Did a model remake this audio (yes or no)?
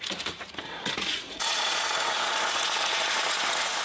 yes